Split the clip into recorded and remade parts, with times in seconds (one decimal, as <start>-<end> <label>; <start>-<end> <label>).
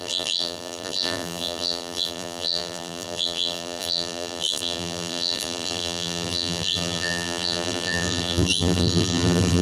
0.0-9.6 remade